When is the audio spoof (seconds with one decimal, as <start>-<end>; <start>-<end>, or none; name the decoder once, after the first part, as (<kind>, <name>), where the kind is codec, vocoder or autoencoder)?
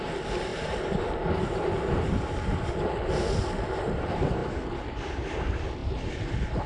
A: none